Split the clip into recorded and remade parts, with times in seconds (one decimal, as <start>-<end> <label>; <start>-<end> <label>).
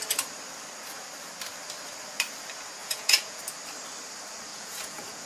0.0-2.8 recorded; 2.8-3.4 remade; 3.4-4.5 recorded; 4.5-5.3 remade